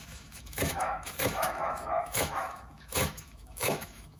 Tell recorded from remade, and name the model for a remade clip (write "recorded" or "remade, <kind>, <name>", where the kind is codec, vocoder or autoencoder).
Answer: remade, autoencoder, DAC-VAE